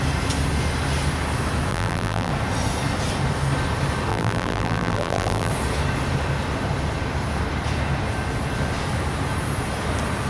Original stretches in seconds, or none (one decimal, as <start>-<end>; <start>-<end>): 0.0-1.7; 2.3-4.1; 5.5-10.3